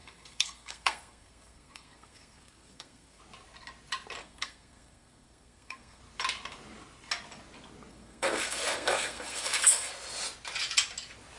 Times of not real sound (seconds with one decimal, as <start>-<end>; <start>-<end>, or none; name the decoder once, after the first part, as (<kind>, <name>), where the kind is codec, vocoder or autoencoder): 0.0-3.2 (codec, SNAC); 4.2-6.0; 7.9-9.9